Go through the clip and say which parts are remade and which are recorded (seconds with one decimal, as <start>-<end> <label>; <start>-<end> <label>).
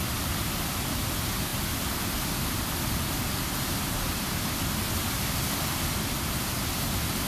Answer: 0.0-7.3 recorded